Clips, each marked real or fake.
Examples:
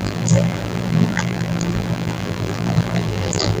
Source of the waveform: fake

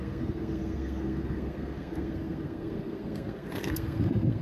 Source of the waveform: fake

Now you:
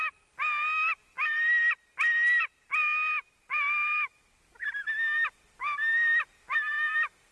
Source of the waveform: real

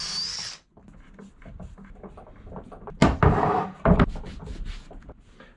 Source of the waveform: real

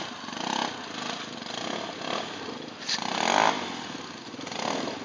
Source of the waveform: real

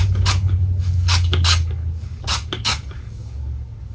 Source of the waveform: fake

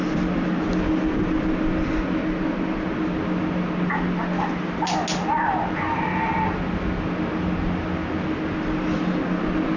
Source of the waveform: real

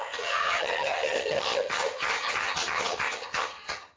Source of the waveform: fake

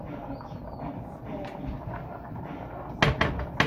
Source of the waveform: real